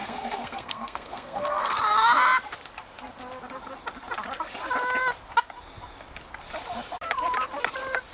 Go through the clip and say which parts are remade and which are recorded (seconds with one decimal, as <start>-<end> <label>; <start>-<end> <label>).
0.0-1.8 remade; 1.8-8.1 recorded